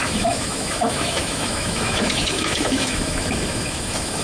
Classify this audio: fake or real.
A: fake